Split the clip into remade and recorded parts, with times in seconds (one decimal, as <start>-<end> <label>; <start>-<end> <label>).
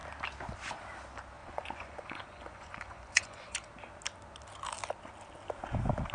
0.0-1.4 recorded; 1.4-3.7 remade; 3.7-6.1 recorded